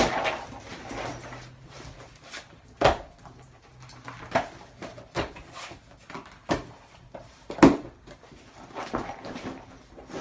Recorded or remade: recorded